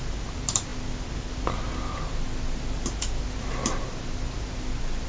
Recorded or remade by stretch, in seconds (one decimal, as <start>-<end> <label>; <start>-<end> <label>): 0.0-5.1 recorded